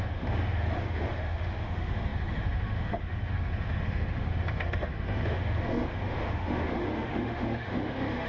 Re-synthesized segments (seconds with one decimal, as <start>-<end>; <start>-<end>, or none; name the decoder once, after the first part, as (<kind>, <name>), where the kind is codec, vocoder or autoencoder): 0.0-8.3 (autoencoder, DAC-VAE)